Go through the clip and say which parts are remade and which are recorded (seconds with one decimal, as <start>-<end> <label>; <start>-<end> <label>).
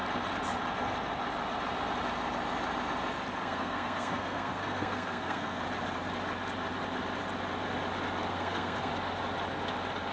0.0-3.4 recorded; 3.4-5.6 remade; 5.6-8.3 recorded; 8.3-8.9 remade; 8.9-10.1 recorded